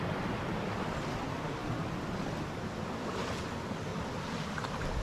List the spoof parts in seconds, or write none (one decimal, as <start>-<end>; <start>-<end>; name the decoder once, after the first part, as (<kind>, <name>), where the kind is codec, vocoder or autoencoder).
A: none